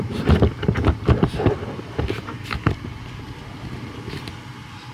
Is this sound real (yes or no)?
yes